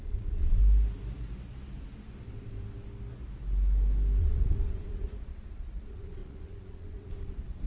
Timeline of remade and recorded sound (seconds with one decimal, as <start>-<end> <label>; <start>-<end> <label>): 0.0-0.6 remade; 0.6-4.2 recorded; 4.2-7.7 remade